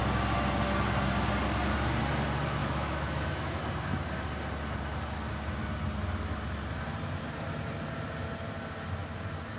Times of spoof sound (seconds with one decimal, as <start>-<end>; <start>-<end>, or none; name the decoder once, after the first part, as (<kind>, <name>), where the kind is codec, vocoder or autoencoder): 2.6-3.6 (autoencoder, DAC-VAE)